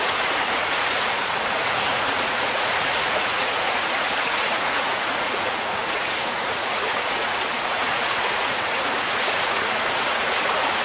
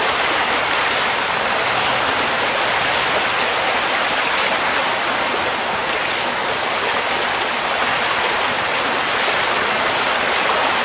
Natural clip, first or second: second